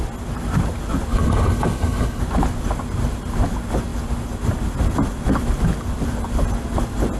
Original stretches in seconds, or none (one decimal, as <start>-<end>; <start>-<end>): 0.0-1.1; 2.2-7.2